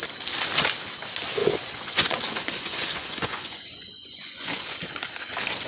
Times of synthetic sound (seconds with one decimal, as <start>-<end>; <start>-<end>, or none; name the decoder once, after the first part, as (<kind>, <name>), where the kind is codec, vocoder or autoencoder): 1.4-4.8 (vocoder, Vocos)